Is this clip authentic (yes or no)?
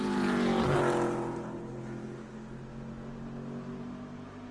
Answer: yes